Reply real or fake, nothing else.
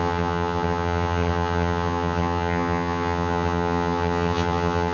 fake